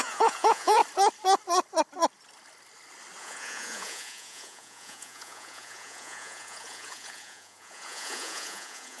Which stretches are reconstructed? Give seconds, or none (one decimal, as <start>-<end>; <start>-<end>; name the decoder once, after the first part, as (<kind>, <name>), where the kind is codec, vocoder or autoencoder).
0.0-0.8 (vocoder, Vocos); 3.2-9.0